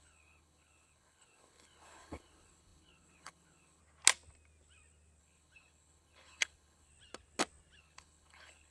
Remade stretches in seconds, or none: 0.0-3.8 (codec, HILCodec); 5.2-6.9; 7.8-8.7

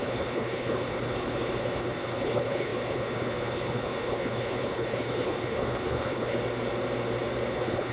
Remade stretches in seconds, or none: 0.0-6.4 (codec, HILCodec); 7.5-7.9

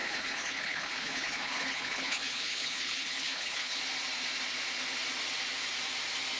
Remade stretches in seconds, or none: 0.0-3.8 (codec, HILCodec)

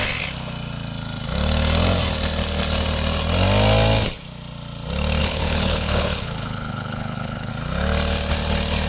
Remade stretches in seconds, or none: 5.2-7.5 (codec, HILCodec)

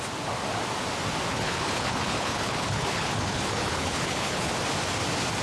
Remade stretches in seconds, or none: 1.3-4.5 (codec, HILCodec)